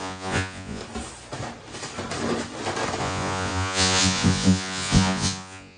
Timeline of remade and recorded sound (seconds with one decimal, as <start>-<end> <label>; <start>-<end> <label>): 0.0-0.8 remade; 0.8-3.0 recorded; 3.0-5.8 remade